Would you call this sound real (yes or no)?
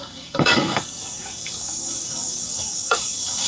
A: no